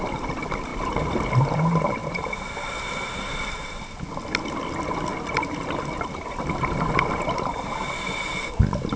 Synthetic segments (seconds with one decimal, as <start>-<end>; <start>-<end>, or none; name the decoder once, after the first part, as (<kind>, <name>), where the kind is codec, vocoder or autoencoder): none